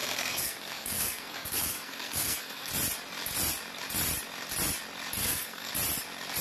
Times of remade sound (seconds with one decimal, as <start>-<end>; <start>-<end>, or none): 0.0-2.7; 5.2-5.7